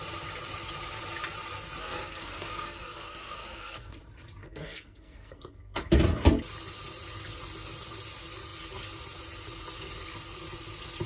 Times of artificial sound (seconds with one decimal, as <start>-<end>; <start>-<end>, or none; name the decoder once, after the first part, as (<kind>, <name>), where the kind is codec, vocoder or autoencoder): 1.8-4.0 (codec, SNAC); 4.4-5.9